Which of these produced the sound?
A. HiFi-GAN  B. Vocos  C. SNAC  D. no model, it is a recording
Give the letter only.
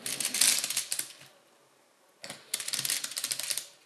D